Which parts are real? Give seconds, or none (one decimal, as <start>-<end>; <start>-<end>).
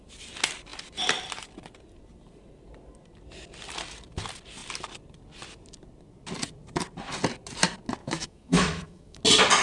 0.0-8.0; 9.2-9.6